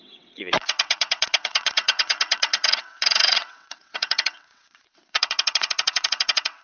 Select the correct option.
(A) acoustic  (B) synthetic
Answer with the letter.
B